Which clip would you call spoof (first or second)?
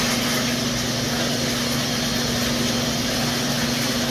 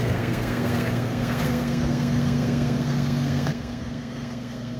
second